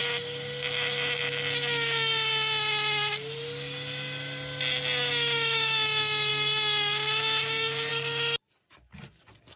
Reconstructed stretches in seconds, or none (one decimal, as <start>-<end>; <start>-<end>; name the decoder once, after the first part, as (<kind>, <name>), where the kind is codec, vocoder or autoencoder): none